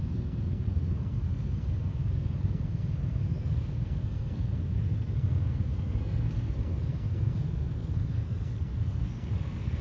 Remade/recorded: remade